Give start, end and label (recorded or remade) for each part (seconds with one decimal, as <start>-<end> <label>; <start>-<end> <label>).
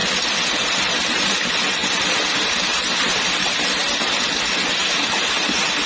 0.0-5.9 recorded